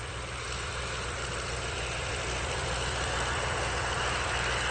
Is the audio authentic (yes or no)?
yes